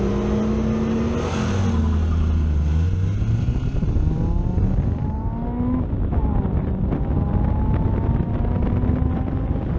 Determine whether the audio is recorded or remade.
recorded